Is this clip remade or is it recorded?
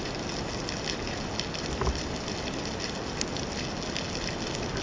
recorded